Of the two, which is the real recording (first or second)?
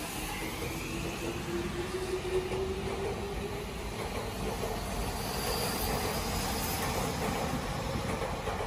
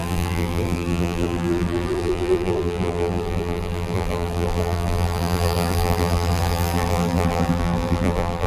first